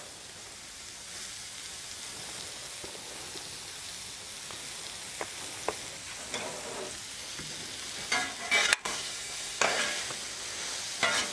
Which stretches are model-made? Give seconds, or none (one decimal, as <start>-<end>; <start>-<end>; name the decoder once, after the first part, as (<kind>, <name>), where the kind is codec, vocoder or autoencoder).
8.8-9.8 (codec, SNAC)